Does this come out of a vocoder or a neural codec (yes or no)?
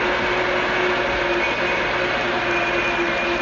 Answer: no